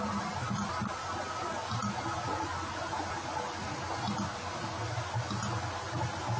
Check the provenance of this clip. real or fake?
real